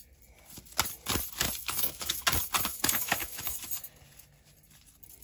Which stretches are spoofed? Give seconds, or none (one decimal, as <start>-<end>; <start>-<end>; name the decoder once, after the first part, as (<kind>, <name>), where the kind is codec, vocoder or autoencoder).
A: 1.6-2.2 (autoencoder, DAC-VAE); 2.7-3.7